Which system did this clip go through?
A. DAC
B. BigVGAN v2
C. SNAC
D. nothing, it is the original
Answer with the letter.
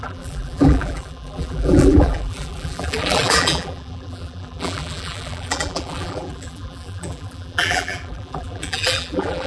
B